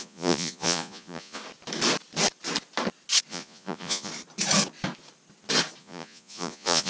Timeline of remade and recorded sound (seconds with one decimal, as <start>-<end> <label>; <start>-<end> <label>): 0.0-1.4 remade; 1.4-3.3 recorded; 3.3-4.1 remade; 4.1-5.8 recorded; 5.8-6.9 remade